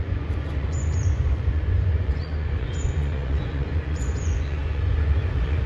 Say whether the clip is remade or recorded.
remade